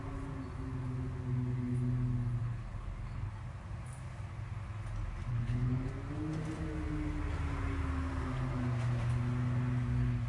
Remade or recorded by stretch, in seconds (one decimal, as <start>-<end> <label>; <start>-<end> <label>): 0.0-2.4 recorded; 2.4-3.3 remade; 3.3-5.3 recorded; 5.3-5.9 remade; 5.9-10.3 recorded